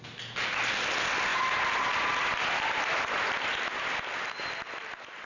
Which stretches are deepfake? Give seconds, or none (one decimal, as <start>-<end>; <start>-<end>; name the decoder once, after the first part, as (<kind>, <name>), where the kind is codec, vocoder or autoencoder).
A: none

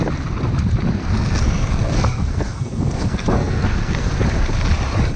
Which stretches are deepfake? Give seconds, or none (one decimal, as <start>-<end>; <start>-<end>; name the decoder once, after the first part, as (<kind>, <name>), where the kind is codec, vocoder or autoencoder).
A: 1.0-4.1 (codec, SNAC)